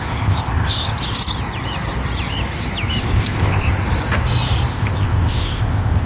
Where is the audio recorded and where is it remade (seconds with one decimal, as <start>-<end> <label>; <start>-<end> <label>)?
0.0-0.9 remade; 0.9-3.0 recorded; 3.0-3.7 remade; 3.7-4.7 recorded; 4.7-6.1 remade